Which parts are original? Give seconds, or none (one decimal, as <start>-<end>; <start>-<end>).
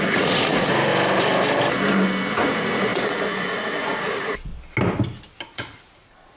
0.9-2.3; 4.5-5.5